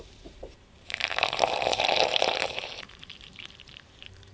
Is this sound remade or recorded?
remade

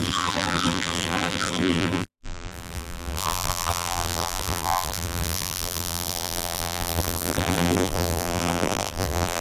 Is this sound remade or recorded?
remade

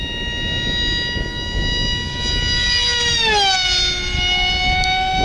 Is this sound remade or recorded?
recorded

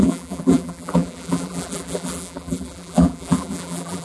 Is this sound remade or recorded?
remade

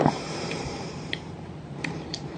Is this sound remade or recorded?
remade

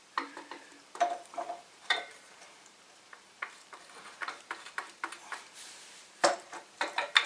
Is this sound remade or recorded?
remade